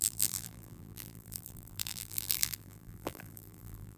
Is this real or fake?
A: fake